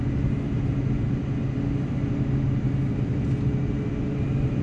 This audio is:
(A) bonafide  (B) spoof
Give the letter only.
A